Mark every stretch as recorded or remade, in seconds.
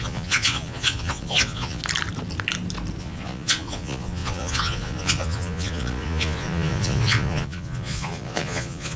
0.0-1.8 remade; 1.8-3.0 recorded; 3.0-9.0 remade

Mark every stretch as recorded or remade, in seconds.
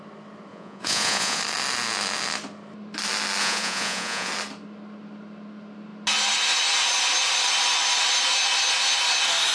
0.0-0.5 recorded; 0.5-1.4 remade; 1.4-3.4 recorded; 3.4-4.3 remade; 4.3-9.5 recorded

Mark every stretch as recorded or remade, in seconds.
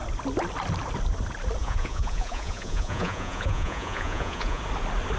0.0-1.6 recorded; 1.6-4.6 remade; 4.6-5.2 recorded